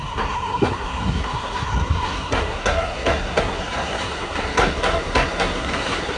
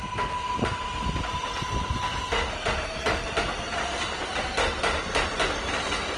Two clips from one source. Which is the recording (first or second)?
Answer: second